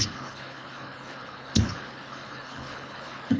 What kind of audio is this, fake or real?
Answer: fake